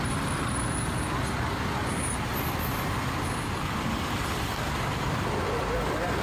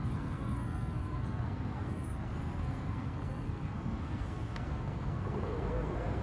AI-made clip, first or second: second